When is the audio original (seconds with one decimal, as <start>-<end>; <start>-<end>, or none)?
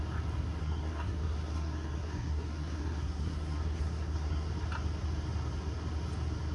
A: 0.0-0.6; 4.5-6.5